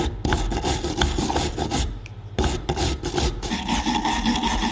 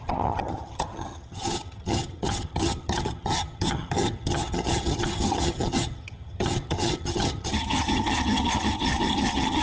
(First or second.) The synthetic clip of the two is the second